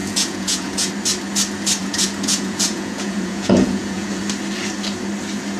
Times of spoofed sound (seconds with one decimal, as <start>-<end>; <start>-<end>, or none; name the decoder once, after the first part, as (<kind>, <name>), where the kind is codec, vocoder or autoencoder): 0.0-0.9 (vocoder, Vocos); 1.8-4.2